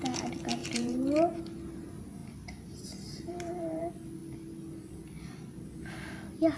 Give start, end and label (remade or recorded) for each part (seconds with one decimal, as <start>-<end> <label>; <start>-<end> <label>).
0.0-0.6 recorded; 0.6-1.4 remade; 1.4-2.2 recorded; 2.2-3.8 remade; 3.8-6.6 recorded